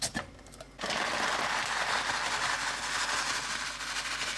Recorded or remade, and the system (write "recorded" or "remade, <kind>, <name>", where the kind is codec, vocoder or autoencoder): recorded